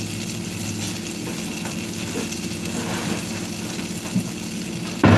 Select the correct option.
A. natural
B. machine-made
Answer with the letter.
A